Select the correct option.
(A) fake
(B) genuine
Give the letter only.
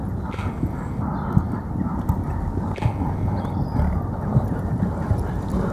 B